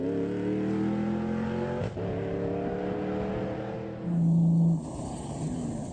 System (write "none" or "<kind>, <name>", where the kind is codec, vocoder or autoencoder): none